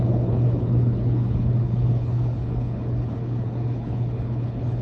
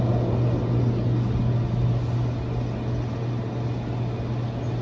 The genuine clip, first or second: second